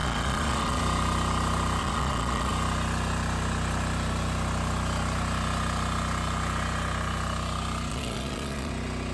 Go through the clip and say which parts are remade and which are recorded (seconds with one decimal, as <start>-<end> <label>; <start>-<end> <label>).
0.0-0.8 remade; 0.8-1.8 recorded; 1.8-2.5 remade; 2.5-7.9 recorded; 7.9-8.7 remade; 8.7-9.1 recorded

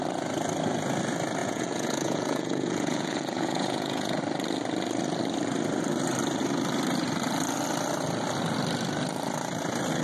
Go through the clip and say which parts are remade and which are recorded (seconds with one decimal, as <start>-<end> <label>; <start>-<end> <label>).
0.0-1.4 recorded; 1.4-4.2 remade; 4.2-10.0 recorded

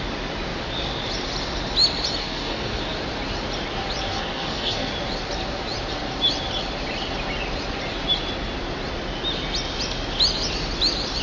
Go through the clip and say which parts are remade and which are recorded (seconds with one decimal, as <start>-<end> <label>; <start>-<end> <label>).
0.0-2.2 recorded; 2.2-2.8 remade; 2.8-4.1 recorded; 4.1-4.9 remade; 4.9-11.2 recorded

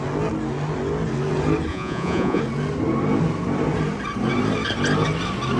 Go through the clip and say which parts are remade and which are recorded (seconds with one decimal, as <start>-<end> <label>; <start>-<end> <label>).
0.0-1.7 recorded; 1.7-2.4 remade; 2.4-5.6 recorded

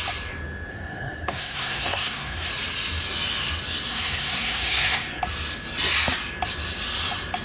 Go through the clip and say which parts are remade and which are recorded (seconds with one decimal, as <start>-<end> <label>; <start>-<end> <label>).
0.0-0.7 recorded; 0.7-2.5 remade; 2.5-3.9 recorded; 3.9-5.2 remade; 5.2-7.4 recorded

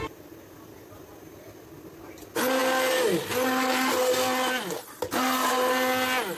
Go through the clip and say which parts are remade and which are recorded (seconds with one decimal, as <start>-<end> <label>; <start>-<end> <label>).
0.0-6.4 recorded